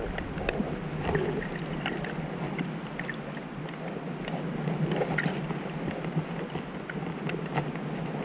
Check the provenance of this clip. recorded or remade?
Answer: recorded